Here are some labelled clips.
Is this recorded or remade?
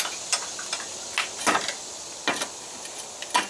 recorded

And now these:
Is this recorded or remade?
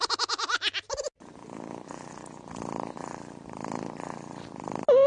recorded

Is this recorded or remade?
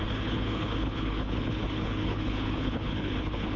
remade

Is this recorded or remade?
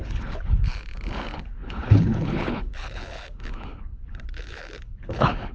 remade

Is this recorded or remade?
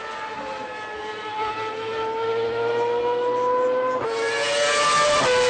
recorded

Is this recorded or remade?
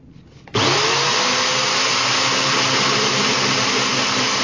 recorded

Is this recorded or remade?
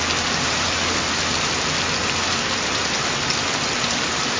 recorded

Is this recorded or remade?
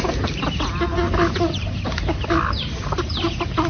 recorded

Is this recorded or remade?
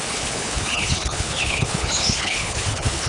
remade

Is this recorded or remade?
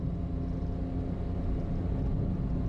recorded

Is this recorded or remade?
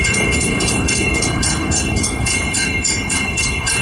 remade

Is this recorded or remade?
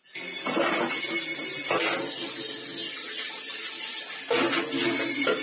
recorded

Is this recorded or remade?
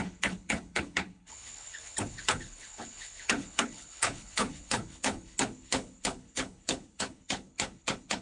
remade